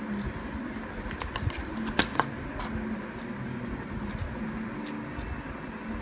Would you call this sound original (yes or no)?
yes